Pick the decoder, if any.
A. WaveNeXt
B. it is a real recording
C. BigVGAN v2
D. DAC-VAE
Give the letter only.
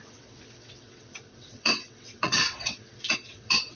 A